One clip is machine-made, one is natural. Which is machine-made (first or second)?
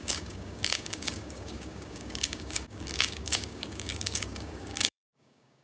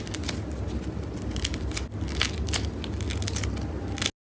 first